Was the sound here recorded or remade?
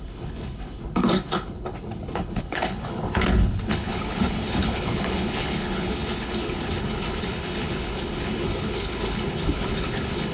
remade